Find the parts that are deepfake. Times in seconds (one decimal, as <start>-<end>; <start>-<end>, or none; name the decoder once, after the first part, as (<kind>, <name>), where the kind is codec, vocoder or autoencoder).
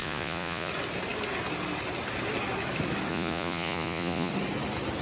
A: 0.0-0.7 (vocoder, Vocos); 3.1-4.3